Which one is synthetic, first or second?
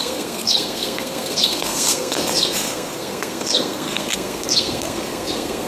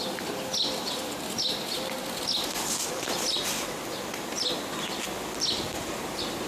first